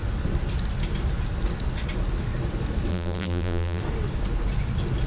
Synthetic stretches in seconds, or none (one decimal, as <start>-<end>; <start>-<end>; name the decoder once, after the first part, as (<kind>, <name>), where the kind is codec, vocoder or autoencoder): 2.9-3.8 (vocoder, BigVGAN v2)